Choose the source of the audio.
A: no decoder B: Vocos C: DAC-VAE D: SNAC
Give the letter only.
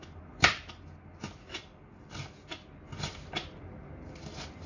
A